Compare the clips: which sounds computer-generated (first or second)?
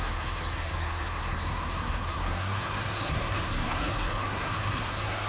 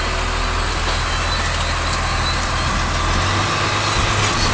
first